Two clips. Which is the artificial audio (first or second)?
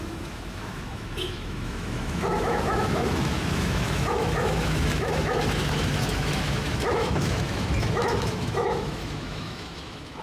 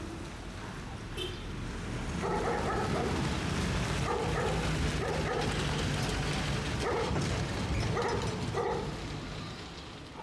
first